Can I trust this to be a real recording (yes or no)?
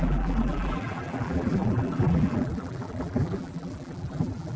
no